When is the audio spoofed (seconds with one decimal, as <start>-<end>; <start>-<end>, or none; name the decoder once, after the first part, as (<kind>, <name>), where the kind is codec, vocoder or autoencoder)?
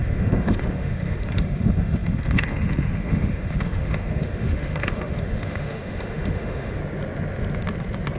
0.0-6.8 (autoencoder, DAC-VAE)